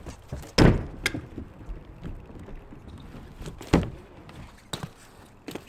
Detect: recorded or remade recorded